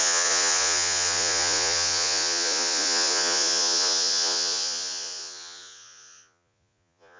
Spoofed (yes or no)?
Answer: yes